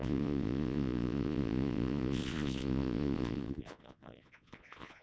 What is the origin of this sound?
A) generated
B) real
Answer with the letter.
A